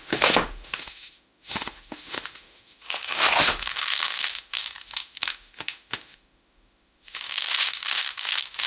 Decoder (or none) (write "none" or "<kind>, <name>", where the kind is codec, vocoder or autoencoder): autoencoder, DAC-VAE